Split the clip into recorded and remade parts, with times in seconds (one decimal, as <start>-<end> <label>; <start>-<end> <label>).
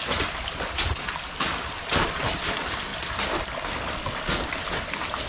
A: 0.0-5.3 recorded